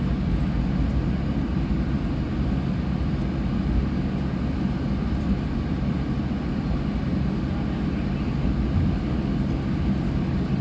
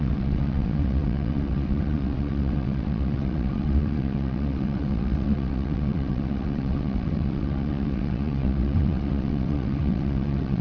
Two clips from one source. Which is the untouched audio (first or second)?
first